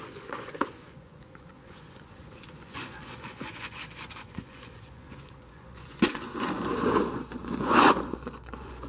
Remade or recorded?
remade